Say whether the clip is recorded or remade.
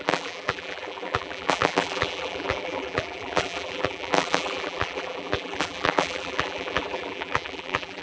remade